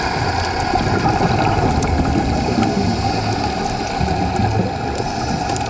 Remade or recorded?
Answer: recorded